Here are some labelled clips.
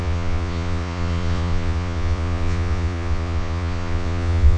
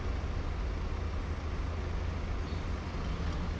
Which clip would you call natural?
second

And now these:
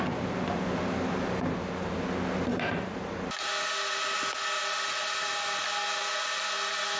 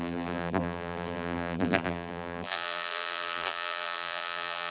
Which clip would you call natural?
first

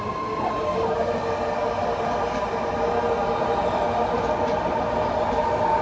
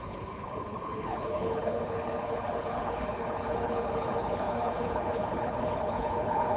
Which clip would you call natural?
first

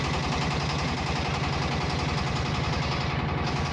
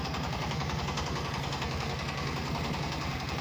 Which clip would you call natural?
first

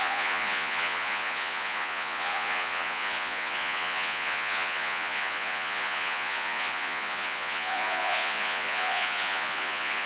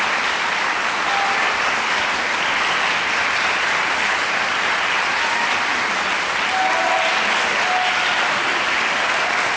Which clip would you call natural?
second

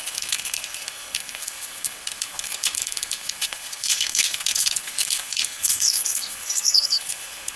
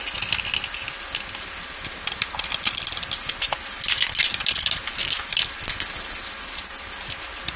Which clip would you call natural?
second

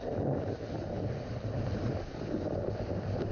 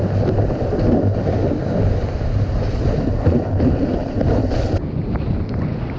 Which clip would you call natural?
second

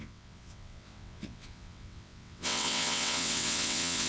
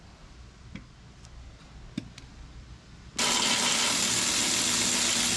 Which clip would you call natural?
second